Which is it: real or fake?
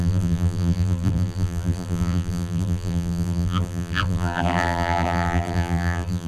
fake